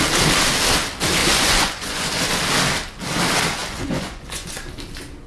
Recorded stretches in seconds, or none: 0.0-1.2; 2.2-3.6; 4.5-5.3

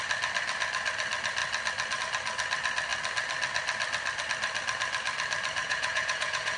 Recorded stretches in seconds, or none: 0.0-5.6

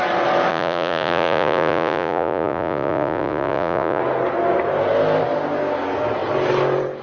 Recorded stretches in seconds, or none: 0.0-0.5; 4.0-7.0

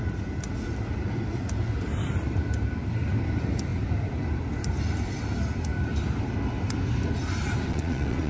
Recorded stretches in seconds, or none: 0.0-7.7

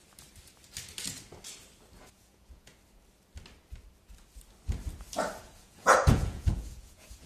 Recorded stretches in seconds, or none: 0.0-2.0; 2.7-5.4

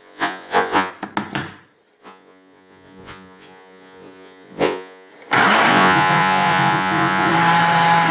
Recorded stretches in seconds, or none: 0.9-2.0; 5.1-5.7; 7.3-8.1